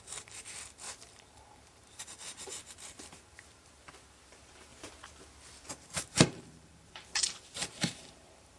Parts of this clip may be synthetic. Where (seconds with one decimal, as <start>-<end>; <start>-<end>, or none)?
0.0-4.7; 5.7-8.6